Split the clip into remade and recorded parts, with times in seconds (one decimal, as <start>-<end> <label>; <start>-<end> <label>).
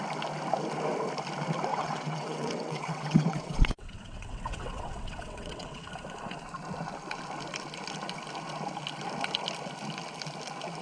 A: 0.0-1.7 recorded; 1.7-5.9 remade; 5.9-10.8 recorded